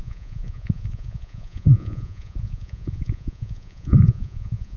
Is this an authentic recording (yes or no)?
no